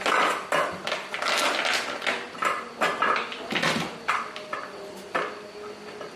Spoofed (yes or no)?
no